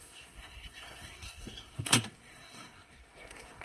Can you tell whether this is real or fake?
fake